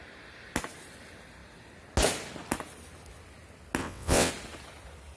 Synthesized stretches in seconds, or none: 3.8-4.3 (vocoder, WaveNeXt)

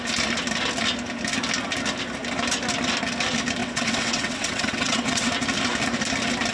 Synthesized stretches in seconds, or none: 3.6-5.3 (vocoder, WaveNeXt)

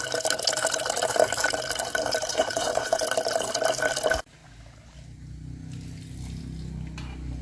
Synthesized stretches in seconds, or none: 2.3-3.0 (vocoder, WaveNeXt)

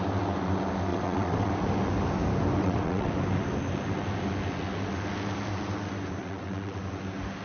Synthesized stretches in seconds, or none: 0.9-1.5 (vocoder, WaveNeXt); 2.6-3.1; 6.2-6.8

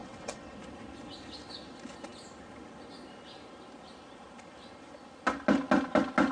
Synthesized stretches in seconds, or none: 0.0-0.6 (vocoder, WaveNeXt)

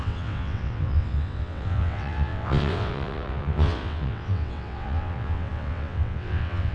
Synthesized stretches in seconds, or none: 0.0-6.7 (vocoder, WaveNeXt)